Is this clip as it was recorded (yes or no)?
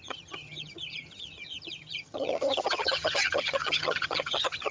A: no